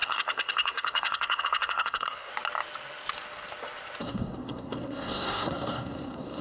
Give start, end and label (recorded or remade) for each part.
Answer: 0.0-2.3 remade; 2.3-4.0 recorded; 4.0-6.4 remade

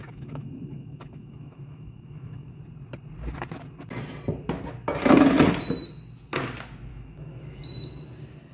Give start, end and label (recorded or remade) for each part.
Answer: 0.0-2.6 remade; 2.6-6.9 recorded; 6.9-7.6 remade; 7.6-8.5 recorded

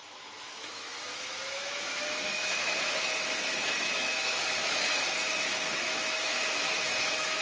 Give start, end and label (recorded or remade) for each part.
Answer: 0.0-7.4 remade

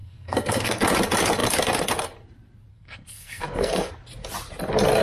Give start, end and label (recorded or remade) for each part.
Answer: 0.0-0.8 remade; 0.8-2.7 recorded; 2.7-3.9 remade; 3.9-5.0 recorded